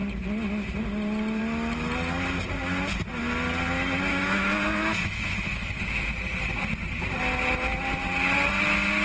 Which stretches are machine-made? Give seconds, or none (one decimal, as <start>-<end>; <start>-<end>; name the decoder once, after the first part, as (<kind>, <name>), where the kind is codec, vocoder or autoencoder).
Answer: 4.1-5.8 (autoencoder, DAC-VAE)